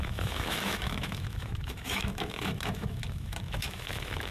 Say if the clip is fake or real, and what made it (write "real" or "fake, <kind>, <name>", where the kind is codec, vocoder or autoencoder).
fake, autoencoder, DAC-VAE